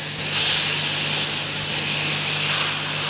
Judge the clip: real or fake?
real